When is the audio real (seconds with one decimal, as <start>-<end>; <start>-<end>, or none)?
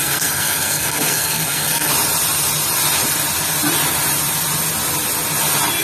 1.9-5.8